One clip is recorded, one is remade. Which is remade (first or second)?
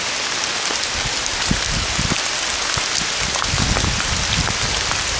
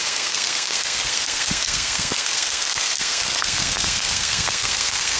second